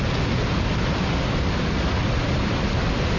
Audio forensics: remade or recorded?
recorded